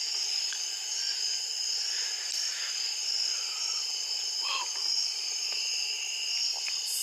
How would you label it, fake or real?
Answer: real